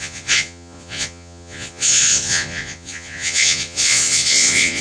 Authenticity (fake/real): fake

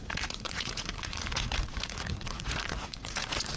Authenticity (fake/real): fake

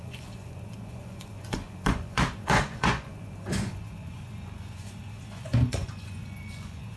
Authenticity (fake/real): fake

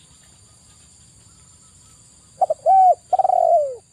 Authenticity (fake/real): real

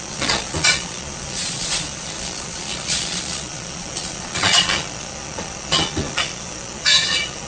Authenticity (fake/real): fake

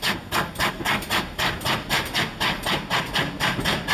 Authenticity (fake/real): real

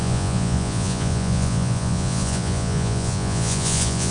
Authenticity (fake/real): fake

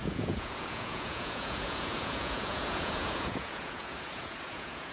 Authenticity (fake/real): fake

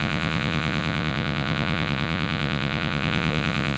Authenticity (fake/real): fake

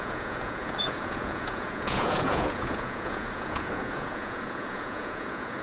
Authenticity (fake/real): fake